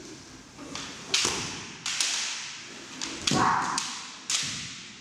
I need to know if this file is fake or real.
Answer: real